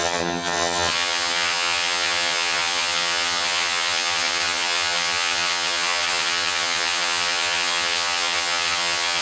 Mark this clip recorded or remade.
remade